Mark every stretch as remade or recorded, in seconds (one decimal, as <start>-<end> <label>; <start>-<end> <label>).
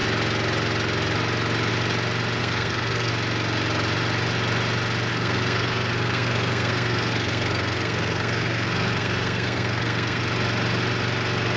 0.0-2.4 recorded; 2.4-3.1 remade; 3.1-5.1 recorded; 5.1-10.2 remade; 10.2-11.6 recorded